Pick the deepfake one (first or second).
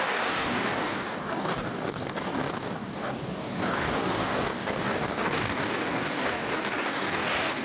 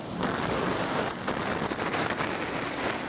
first